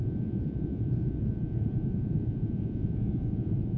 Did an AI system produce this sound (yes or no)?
yes